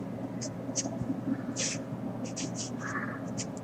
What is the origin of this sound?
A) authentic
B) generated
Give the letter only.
A